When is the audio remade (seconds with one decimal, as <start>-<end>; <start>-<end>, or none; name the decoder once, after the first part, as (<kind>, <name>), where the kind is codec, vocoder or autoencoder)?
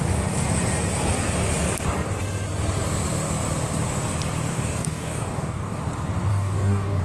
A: 4.5-5.8 (codec, DAC); 6.3-7.0